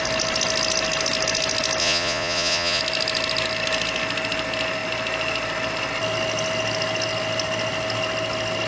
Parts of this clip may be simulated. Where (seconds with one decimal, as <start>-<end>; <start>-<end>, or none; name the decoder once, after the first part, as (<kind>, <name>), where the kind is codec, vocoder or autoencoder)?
1.8-2.8 (vocoder, Vocos)